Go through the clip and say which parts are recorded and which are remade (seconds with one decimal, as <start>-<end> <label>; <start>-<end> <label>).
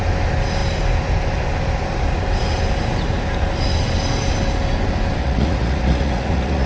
0.0-5.2 recorded; 5.2-6.7 remade